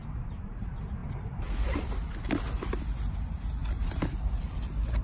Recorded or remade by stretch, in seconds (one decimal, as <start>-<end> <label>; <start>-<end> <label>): 0.0-5.0 recorded